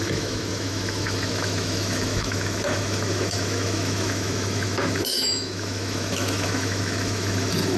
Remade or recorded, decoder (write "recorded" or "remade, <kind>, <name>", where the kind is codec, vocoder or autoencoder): remade, autoencoder, DAC-VAE